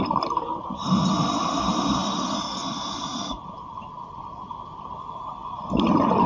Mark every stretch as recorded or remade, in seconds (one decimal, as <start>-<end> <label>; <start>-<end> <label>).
0.0-3.1 recorded; 3.1-4.9 remade; 4.9-5.4 recorded; 5.4-6.3 remade